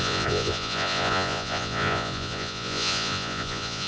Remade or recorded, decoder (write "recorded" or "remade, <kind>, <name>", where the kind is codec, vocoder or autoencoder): remade, vocoder, Vocos